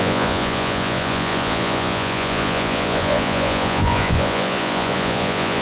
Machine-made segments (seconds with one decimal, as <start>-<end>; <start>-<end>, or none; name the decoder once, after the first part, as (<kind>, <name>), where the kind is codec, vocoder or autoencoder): 0.0-5.6 (vocoder, Vocos)